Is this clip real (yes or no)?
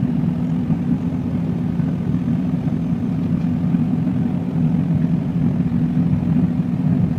no